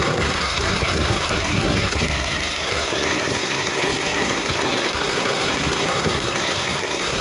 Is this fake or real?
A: fake